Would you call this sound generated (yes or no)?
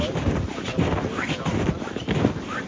no